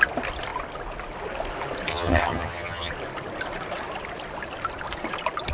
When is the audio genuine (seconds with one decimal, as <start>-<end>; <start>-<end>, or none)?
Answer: 0.0-1.9; 2.9-5.5